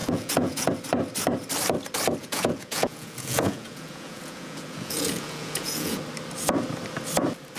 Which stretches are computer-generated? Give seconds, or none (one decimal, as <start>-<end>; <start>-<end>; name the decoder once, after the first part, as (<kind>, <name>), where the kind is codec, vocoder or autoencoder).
0.0-0.7 (vocoder, Vocos); 2.2-6.0